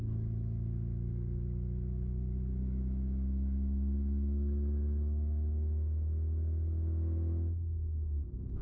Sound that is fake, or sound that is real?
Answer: fake